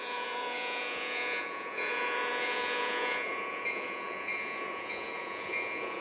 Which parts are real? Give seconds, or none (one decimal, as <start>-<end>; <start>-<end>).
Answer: none